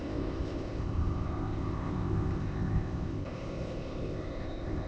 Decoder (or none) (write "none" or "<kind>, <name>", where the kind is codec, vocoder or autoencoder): codec, ZipCodec